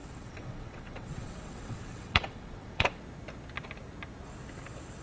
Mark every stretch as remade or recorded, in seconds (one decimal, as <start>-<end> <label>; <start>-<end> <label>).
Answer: 0.0-3.0 remade; 3.0-5.0 recorded